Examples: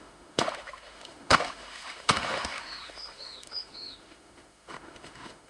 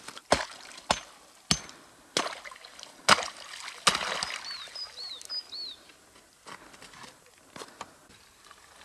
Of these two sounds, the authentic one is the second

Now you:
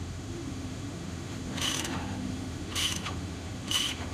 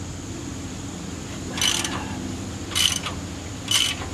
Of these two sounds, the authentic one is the second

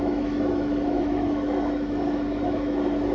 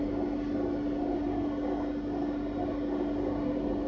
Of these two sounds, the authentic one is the second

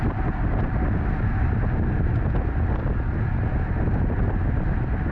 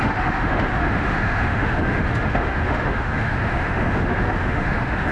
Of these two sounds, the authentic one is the first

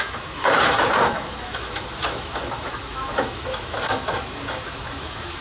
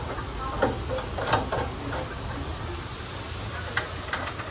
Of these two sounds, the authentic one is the second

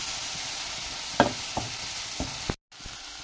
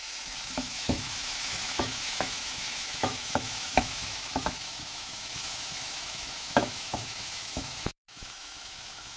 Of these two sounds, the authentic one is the first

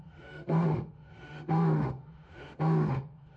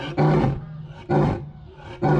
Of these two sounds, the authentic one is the second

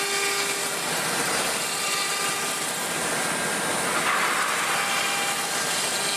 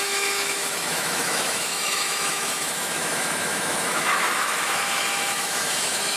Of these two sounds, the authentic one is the first